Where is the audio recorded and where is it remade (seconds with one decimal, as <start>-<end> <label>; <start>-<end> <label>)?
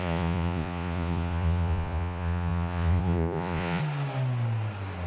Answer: 0.0-3.8 remade; 3.8-5.1 recorded